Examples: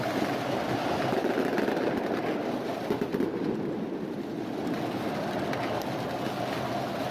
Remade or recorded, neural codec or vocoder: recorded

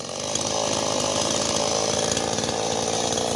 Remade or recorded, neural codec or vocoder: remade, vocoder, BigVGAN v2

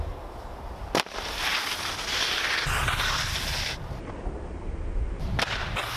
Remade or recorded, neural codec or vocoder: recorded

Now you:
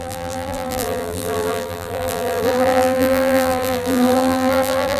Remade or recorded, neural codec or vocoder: remade, vocoder, BigVGAN v2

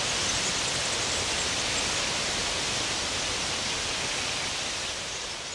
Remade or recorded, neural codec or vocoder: recorded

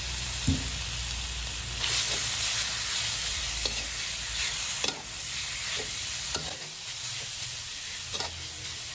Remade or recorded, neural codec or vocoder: recorded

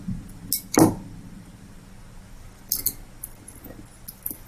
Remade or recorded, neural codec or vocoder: recorded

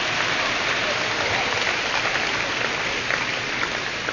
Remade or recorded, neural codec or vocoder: remade, vocoder, BigVGAN v2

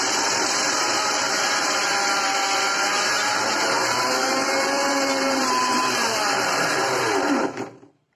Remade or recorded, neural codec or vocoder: remade, vocoder, BigVGAN v2